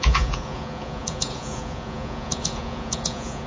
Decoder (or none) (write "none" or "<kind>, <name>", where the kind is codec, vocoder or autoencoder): vocoder, Vocos